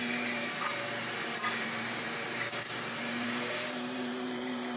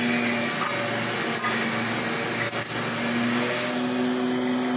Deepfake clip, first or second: first